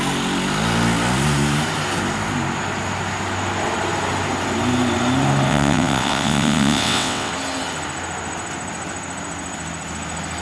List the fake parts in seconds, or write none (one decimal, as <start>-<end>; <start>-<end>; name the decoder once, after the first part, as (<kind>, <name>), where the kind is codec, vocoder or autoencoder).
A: 5.5-7.3 (vocoder, WaveNeXt)